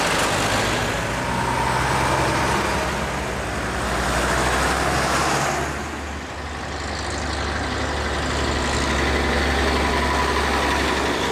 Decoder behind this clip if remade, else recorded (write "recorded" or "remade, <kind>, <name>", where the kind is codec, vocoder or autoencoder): recorded